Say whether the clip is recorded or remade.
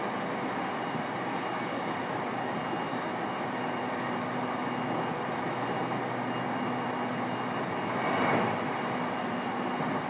recorded